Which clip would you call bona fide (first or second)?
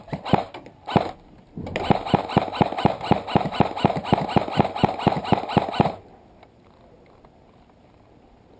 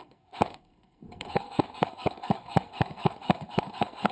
first